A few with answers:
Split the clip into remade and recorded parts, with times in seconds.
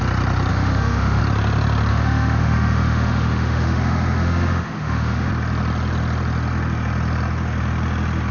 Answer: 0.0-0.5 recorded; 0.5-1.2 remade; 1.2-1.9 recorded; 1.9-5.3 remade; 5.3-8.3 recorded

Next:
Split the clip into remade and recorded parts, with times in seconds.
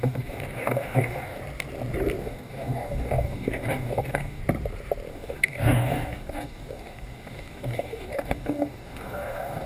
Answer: 0.0-1.4 remade; 1.4-2.2 recorded; 2.2-4.4 remade; 4.4-5.1 recorded; 5.1-9.7 remade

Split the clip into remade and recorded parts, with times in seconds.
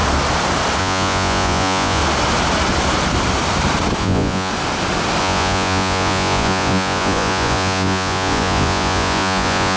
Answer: 0.0-0.8 recorded; 0.8-2.0 remade; 2.0-4.0 recorded; 4.0-4.5 remade; 4.5-5.2 recorded; 5.2-9.8 remade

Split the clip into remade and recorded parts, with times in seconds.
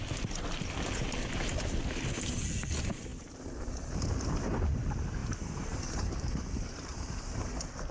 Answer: 0.0-5.2 recorded; 5.2-7.4 remade; 7.4-7.9 recorded